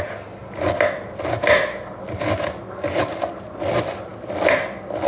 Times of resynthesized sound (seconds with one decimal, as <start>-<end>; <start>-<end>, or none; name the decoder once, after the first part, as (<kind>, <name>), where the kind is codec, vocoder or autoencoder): none